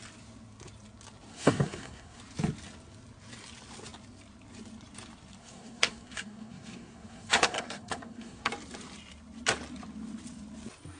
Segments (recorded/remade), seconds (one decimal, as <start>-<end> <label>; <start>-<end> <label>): 0.0-1.3 recorded; 1.3-2.2 remade; 2.2-5.4 recorded; 5.4-8.5 remade; 8.5-11.0 recorded